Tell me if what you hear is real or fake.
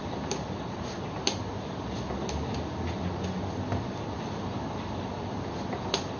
real